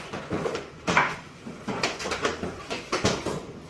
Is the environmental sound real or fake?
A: fake